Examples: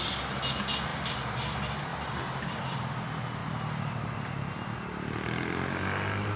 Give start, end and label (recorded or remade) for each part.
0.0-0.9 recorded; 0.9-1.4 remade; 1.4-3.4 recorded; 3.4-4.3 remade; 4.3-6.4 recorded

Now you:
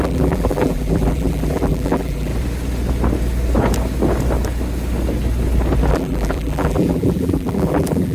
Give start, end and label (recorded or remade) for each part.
0.0-2.3 remade; 2.3-5.9 recorded; 5.9-8.1 remade

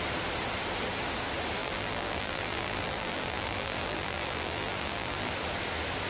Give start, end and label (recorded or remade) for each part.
0.0-1.6 recorded; 1.6-5.3 remade; 5.3-6.1 recorded

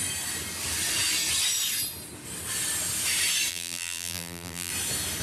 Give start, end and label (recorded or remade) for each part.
0.0-3.5 recorded; 3.5-4.7 remade; 4.7-5.2 recorded

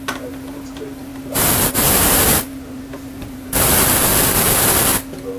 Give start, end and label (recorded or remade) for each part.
0.0-1.1 remade; 1.1-1.7 recorded; 1.7-4.1 remade; 4.1-5.4 recorded